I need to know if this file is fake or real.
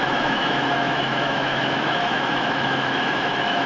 fake